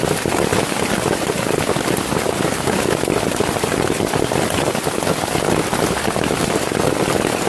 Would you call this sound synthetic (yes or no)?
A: no